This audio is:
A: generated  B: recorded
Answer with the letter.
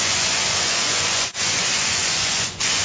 A